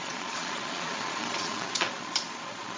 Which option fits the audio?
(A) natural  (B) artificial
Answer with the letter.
B